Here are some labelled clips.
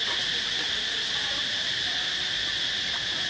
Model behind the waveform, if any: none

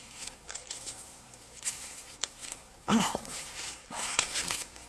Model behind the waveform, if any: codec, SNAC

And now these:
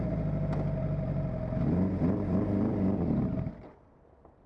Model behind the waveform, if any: none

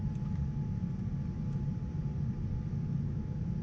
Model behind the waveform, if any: none